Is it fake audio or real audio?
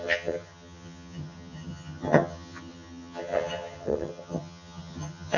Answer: fake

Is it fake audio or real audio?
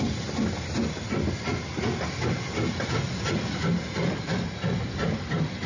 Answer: real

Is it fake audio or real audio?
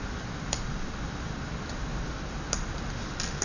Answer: real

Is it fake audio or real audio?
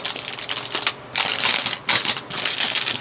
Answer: real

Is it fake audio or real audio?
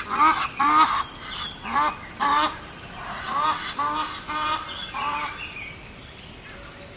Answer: real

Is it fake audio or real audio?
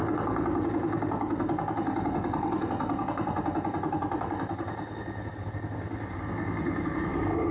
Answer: real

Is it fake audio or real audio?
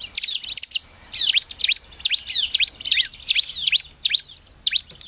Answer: real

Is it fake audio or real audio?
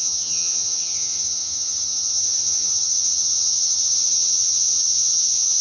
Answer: fake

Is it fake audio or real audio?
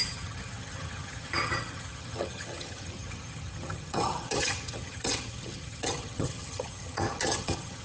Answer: fake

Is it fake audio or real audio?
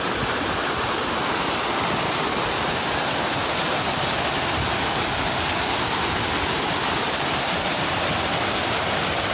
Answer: real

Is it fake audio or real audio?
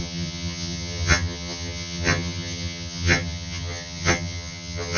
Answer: fake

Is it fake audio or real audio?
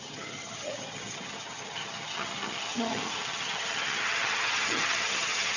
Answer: fake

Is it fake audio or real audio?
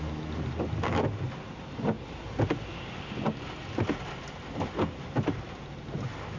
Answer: real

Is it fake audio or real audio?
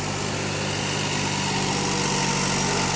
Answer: real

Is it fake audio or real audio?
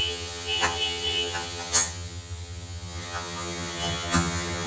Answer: fake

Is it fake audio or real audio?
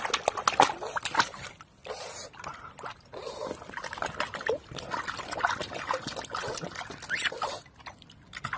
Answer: real